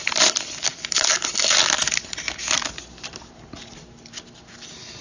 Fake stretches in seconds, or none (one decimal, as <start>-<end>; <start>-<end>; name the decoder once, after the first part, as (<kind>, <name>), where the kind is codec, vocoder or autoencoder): none